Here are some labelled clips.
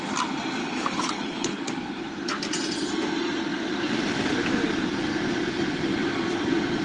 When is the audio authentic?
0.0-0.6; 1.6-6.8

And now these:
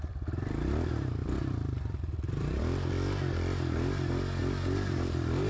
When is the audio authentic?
0.0-1.2; 2.6-4.4

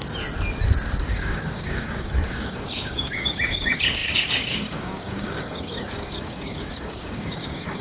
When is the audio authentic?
0.0-1.0